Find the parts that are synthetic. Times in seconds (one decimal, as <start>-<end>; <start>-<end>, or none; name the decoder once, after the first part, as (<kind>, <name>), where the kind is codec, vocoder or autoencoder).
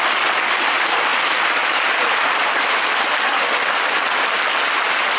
none